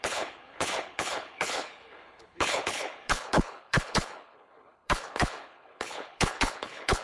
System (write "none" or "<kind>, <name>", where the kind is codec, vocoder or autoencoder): codec, HILCodec